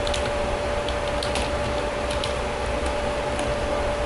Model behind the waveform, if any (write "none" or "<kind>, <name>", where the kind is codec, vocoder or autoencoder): none